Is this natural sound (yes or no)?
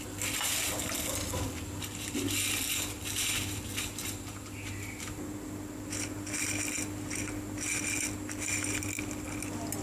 yes